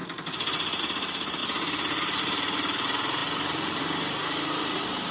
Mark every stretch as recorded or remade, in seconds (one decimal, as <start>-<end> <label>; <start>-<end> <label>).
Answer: 0.0-0.8 recorded; 0.8-1.4 remade; 1.4-2.2 recorded; 2.2-5.1 remade